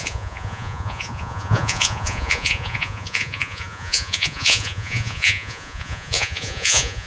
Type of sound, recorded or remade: remade